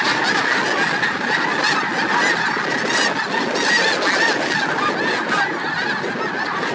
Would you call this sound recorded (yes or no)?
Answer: yes